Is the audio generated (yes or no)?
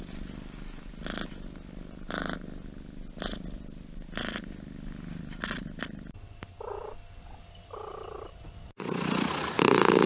no